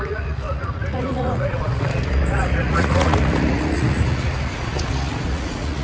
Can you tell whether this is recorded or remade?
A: remade